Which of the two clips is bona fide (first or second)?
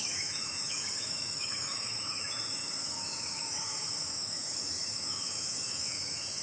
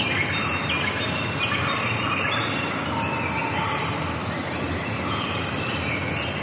second